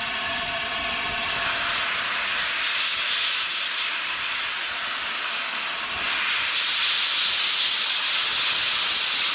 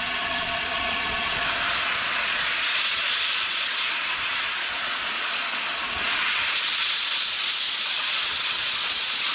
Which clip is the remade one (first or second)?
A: second